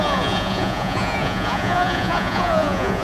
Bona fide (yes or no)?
no